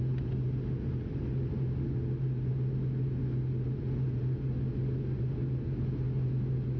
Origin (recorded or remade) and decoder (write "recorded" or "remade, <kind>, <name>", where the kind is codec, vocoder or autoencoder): recorded